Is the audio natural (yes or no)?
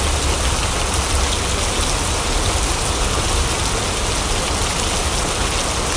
yes